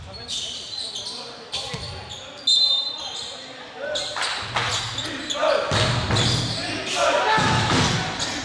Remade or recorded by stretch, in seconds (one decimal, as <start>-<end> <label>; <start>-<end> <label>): 0.0-5.4 recorded; 5.4-7.7 remade; 7.7-8.4 recorded